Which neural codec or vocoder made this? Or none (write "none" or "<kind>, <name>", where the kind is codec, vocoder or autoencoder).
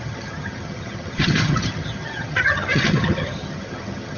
vocoder, HiFi-GAN